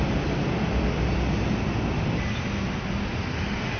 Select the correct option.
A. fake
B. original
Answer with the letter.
B